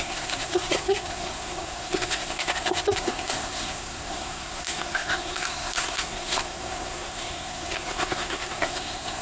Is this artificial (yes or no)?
yes